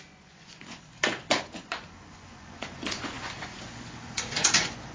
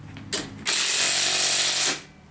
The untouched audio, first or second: second